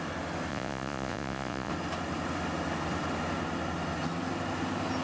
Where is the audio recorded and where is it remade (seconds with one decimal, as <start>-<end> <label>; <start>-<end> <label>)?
0.0-0.5 recorded; 0.5-1.7 remade; 1.7-5.0 recorded